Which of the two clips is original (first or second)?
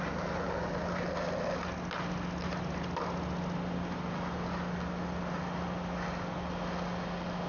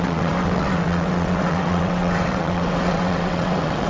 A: first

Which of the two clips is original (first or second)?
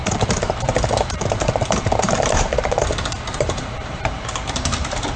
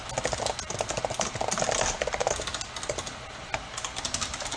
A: second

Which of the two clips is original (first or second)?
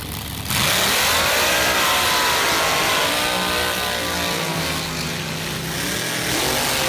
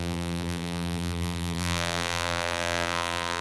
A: first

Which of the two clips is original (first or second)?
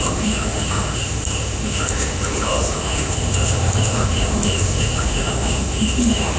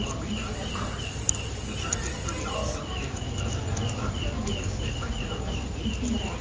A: second